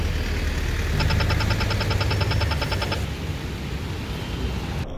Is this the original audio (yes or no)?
yes